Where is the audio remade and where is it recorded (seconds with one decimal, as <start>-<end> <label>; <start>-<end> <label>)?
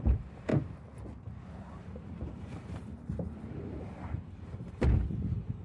0.0-0.5 remade; 0.5-1.6 recorded; 1.6-5.6 remade